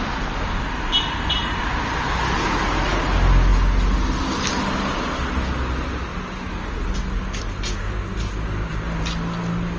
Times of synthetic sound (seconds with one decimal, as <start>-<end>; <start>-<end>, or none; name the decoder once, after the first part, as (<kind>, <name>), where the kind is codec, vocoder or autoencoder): none